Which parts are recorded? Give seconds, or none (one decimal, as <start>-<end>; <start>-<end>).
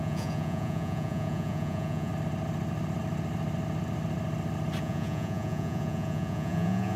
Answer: 2.1-4.8